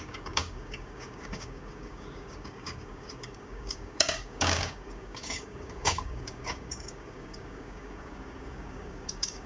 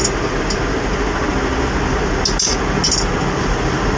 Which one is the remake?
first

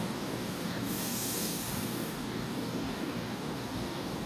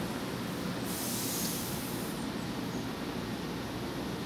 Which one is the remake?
first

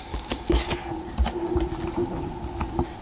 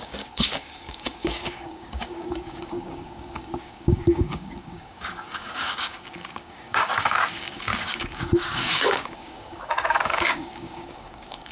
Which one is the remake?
second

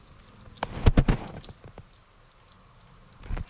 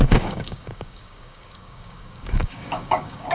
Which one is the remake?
second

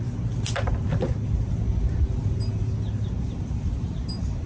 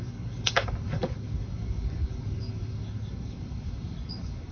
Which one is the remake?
second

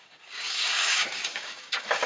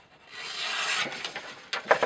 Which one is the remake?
first